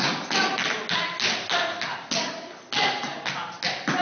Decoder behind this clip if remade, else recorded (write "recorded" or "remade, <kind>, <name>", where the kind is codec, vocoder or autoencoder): recorded